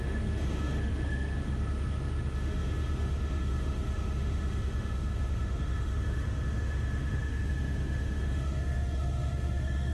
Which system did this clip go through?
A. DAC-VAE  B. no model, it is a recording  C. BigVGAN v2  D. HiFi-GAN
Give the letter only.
A